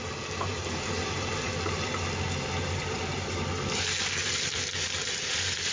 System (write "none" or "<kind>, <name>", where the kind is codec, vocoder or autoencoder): vocoder, BigVGAN v2